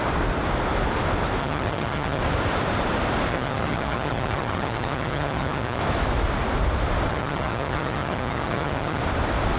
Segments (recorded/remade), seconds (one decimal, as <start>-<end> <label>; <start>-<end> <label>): 0.0-1.4 recorded; 1.4-2.2 remade; 2.2-3.3 recorded; 3.3-5.8 remade; 5.8-7.1 recorded; 7.1-9.0 remade; 9.0-9.6 recorded

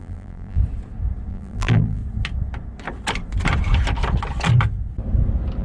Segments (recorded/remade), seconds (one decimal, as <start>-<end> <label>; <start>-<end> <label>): 0.0-0.6 remade; 0.6-1.3 recorded; 1.3-2.0 remade; 2.0-5.6 recorded

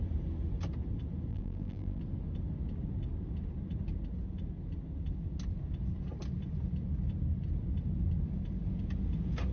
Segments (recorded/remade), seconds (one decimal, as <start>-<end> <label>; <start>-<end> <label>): 0.0-1.3 recorded; 1.3-2.0 remade; 2.0-9.5 recorded

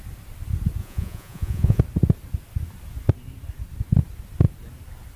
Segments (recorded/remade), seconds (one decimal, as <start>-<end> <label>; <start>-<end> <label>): 0.0-0.8 recorded; 0.8-1.8 remade; 1.8-5.2 recorded

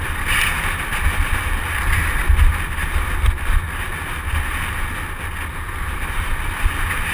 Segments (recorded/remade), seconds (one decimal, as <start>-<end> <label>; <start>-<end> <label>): 0.0-7.1 recorded

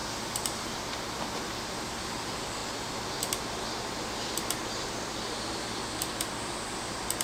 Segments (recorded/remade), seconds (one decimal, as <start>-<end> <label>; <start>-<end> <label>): 0.0-7.2 recorded